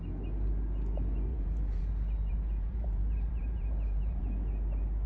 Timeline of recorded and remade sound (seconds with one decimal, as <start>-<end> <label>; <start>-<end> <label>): 0.0-1.3 recorded; 1.3-1.8 remade; 1.8-2.3 recorded; 2.3-4.2 remade; 4.2-5.1 recorded